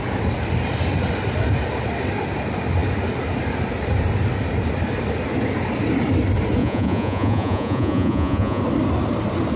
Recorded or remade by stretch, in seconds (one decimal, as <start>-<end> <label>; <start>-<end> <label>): 0.0-6.6 recorded; 6.6-8.6 remade; 8.6-9.6 recorded